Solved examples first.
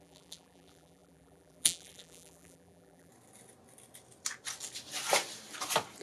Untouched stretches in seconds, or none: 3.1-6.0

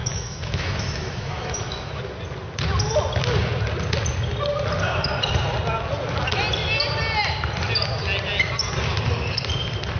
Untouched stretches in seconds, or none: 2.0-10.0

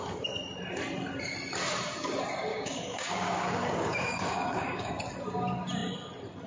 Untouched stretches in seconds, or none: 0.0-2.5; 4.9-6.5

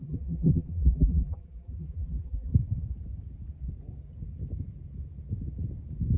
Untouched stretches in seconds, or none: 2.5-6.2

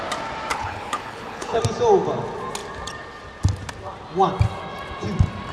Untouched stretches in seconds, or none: 0.0-0.5; 1.6-5.5

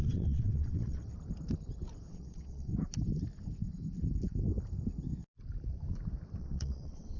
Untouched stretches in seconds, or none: 1.1-2.0; 2.7-6.4

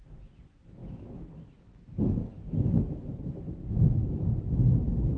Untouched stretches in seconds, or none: none

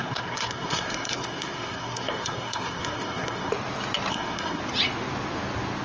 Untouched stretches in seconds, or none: 3.5-4.1; 4.6-5.8